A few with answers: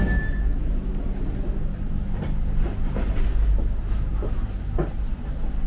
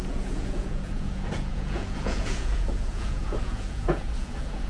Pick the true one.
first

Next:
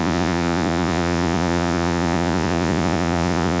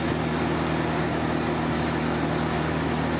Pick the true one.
second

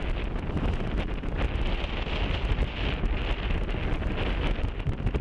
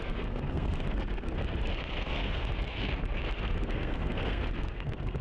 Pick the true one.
first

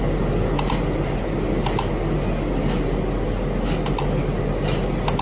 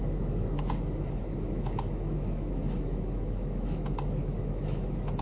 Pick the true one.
first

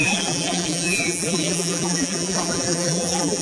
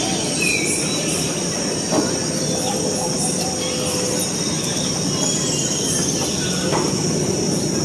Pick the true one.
second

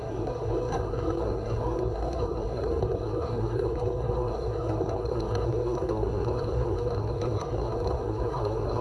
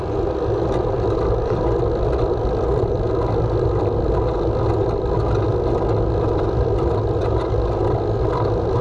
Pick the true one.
second